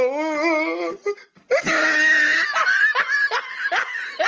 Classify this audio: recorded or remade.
recorded